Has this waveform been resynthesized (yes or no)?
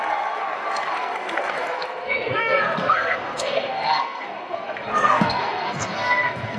yes